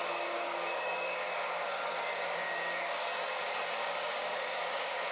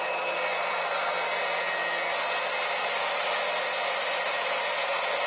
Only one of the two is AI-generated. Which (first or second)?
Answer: first